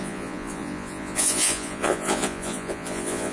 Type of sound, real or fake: fake